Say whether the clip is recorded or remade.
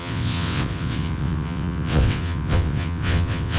remade